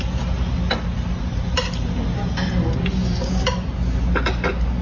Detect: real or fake real